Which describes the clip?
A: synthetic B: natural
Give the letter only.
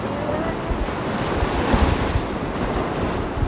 B